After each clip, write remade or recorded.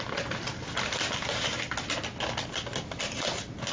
recorded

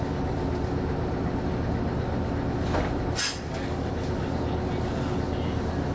recorded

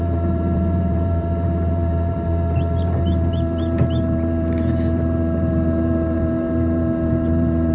remade